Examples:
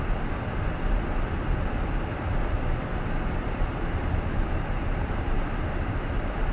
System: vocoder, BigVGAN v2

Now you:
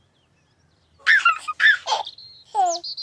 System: none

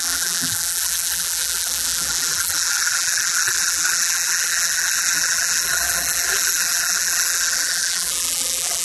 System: vocoder, BigVGAN v2